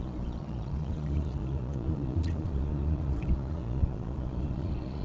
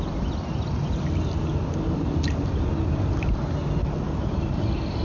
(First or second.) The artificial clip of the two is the first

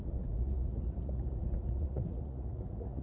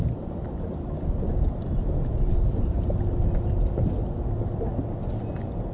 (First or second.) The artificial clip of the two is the first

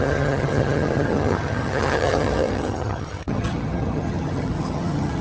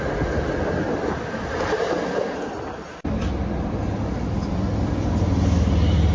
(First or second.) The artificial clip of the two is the first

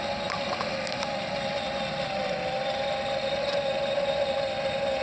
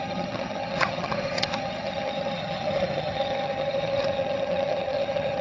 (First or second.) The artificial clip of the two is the second